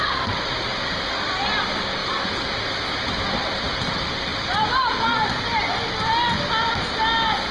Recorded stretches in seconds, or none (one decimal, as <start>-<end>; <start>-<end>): 0.0-0.7; 1.4-2.0; 2.6-7.5